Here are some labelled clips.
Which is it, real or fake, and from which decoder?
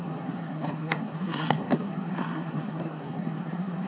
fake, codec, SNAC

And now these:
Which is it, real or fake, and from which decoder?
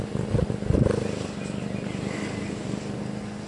real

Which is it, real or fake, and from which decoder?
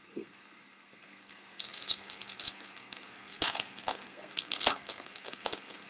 fake, codec, SNAC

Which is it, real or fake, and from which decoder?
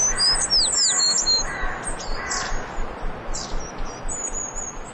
real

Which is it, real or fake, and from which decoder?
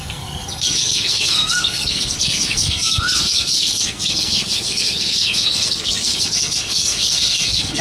fake, codec, SNAC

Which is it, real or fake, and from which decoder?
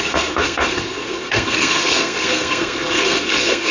fake, codec, SNAC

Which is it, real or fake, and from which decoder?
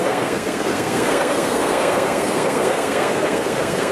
fake, codec, SNAC